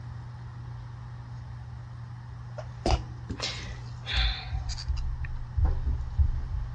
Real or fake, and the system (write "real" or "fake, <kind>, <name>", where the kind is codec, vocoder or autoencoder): real